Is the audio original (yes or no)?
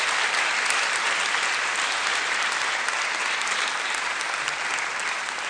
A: yes